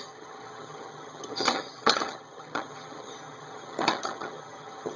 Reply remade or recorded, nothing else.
remade